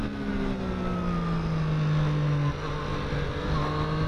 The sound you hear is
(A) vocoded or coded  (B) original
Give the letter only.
B